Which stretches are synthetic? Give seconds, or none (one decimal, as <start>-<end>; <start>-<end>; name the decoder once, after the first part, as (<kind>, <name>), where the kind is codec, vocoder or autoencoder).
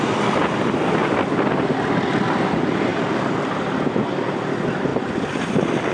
0.0-1.0 (vocoder, BigVGAN v2); 1.7-5.9